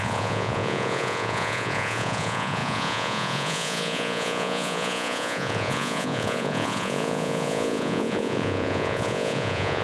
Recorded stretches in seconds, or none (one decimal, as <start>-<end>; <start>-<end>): none